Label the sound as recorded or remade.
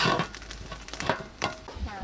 remade